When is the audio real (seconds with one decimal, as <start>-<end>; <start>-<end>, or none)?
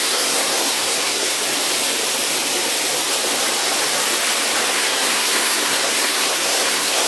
1.4-4.7